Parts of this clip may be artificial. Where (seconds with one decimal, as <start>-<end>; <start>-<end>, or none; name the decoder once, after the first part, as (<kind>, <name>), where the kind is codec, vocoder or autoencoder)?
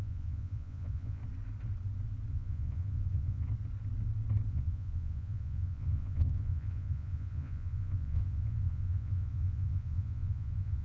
0.0-1.2 (vocoder, Vocos); 2.3-3.5; 4.5-10.8